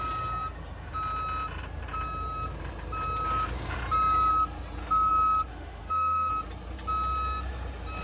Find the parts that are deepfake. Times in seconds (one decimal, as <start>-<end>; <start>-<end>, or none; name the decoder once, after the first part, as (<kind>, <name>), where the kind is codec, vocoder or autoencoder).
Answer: 5.5-6.3 (autoencoder, DAC-VAE)